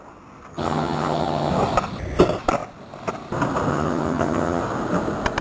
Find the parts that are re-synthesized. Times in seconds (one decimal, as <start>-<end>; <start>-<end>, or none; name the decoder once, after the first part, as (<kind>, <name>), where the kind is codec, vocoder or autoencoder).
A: 0.5-1.5 (vocoder, HiFi-GAN); 3.7-4.6